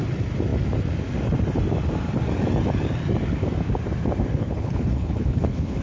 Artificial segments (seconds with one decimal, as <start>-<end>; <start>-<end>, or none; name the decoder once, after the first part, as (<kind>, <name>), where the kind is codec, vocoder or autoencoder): 4.3-5.8 (codec, HILCodec)